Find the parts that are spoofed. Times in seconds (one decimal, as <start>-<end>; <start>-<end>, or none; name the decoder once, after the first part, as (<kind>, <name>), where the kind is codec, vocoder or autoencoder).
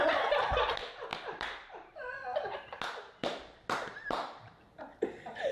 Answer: 1.1-2.8 (vocoder, BigVGAN v2)